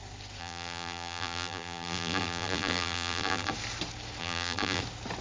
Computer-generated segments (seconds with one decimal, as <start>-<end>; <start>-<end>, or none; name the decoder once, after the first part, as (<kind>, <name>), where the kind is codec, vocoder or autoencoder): 0.4-3.5 (vocoder, BigVGAN v2); 4.2-4.8